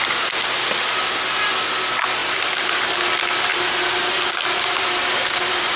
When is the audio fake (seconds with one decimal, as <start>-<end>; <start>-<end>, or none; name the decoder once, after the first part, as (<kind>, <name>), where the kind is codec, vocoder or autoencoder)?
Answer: 2.2-2.8 (vocoder, BigVGAN v2)